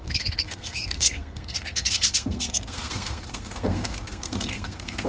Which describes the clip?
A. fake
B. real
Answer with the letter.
A